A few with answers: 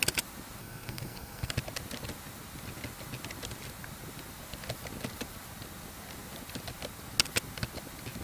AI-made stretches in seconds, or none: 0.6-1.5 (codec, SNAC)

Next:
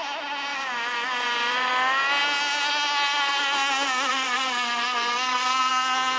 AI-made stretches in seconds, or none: 0.5-1.7 (vocoder, BigVGAN v2); 4.1-5.7

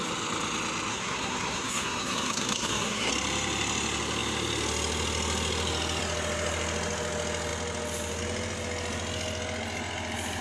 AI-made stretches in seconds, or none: 0.9-3.1 (codec, SNAC)